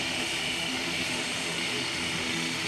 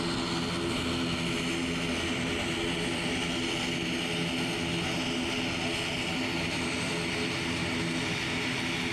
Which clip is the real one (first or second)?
second